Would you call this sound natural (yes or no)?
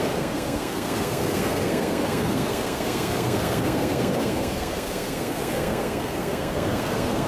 no